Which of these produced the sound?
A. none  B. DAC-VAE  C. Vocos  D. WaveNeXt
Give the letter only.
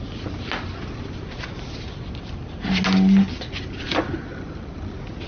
A